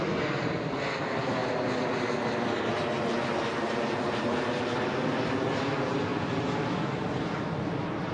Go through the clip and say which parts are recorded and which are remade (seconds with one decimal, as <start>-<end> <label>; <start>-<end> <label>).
0.0-8.1 recorded